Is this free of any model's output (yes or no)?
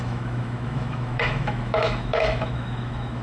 no